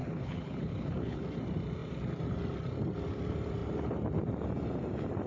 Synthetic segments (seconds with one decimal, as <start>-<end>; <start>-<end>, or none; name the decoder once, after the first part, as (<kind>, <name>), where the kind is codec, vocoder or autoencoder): 0.0-1.2 (codec, HILCodec)